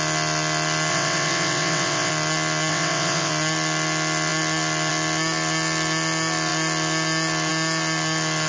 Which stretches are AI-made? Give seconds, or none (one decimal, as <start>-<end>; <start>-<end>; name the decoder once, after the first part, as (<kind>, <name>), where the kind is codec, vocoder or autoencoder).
0.9-2.1 (vocoder, WaveNeXt); 2.7-3.3